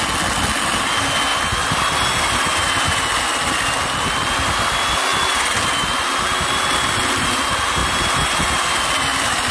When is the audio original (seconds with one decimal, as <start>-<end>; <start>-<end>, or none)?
0.0-1.3; 1.8-9.5